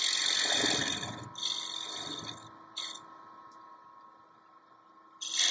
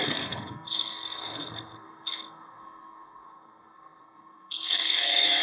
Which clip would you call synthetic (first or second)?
second